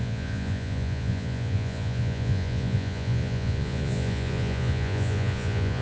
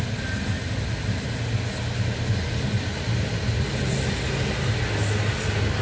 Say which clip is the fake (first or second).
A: first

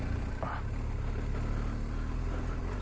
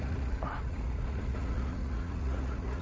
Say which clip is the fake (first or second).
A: second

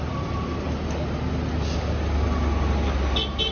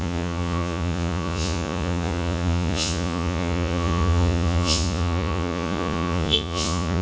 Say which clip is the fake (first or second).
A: second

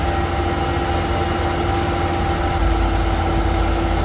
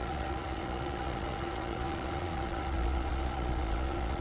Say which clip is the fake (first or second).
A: second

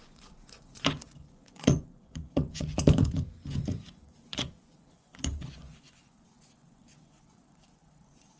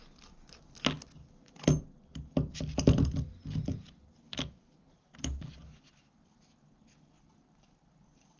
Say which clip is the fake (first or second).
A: first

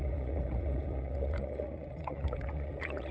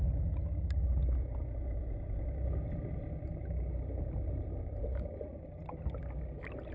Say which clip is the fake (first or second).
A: first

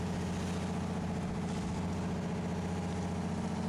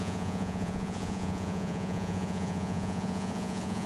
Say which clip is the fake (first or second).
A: second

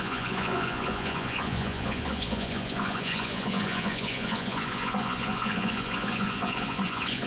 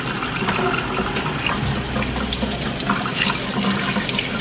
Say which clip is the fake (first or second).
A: first